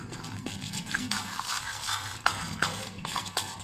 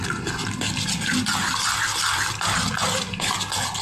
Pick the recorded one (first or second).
second